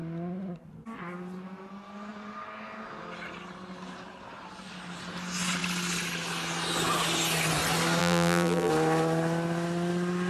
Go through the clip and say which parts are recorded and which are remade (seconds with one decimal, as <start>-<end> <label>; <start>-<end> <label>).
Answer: 0.0-8.0 recorded; 8.0-8.7 remade; 8.7-10.3 recorded